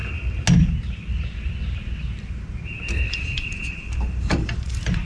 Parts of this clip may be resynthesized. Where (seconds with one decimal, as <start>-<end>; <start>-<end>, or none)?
3.1-5.1